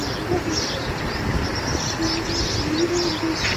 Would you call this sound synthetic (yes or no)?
no